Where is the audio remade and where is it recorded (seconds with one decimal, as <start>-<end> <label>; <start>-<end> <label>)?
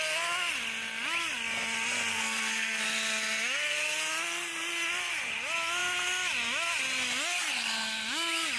0.0-2.1 recorded; 2.1-2.8 remade; 2.8-8.6 recorded